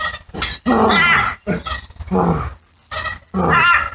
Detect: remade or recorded recorded